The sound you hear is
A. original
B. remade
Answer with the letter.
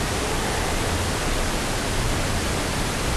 A